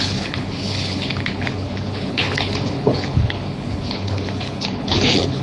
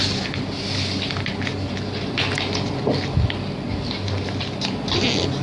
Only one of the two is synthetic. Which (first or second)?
first